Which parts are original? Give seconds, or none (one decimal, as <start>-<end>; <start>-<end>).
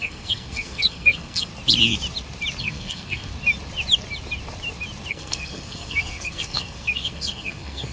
1.5-2.6; 3.3-5.1